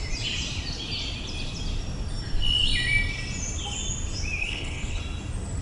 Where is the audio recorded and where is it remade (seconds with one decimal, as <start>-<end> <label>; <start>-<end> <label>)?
0.0-4.4 recorded; 4.4-5.0 remade; 5.0-5.6 recorded